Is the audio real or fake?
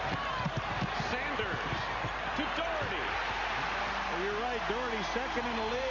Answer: real